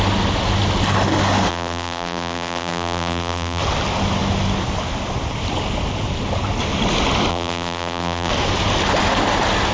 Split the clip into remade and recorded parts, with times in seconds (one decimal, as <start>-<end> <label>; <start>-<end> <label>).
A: 0.0-1.5 recorded; 1.5-3.6 remade; 3.6-7.3 recorded; 7.3-8.3 remade; 8.3-9.7 recorded